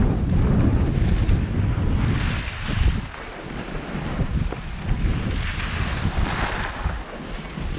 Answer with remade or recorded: recorded